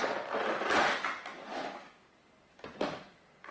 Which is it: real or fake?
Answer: real